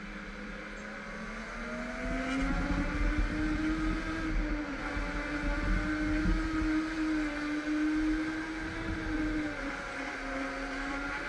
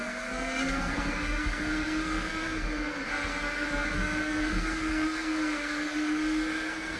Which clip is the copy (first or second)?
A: second